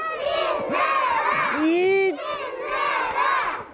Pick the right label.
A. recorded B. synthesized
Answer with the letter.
A